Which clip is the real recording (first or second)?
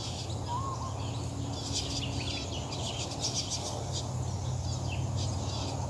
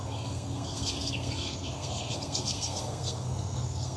first